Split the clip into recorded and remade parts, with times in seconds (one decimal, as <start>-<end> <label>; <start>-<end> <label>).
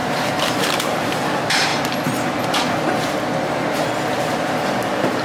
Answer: 0.0-1.7 remade; 1.7-4.3 recorded; 4.3-5.2 remade